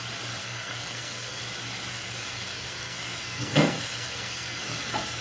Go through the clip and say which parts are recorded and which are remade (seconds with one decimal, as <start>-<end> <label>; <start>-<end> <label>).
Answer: 0.0-0.4 recorded; 0.4-1.4 remade; 1.4-1.9 recorded; 1.9-5.2 remade